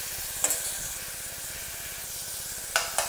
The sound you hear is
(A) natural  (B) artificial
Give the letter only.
A